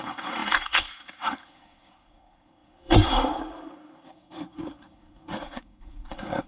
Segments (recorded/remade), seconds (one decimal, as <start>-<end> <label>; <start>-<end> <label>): 0.0-6.5 remade